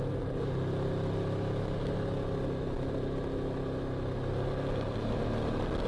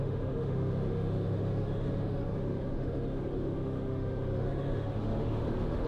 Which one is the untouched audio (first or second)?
first